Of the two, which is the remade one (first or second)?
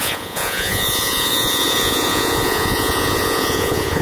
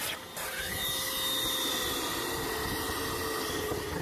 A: first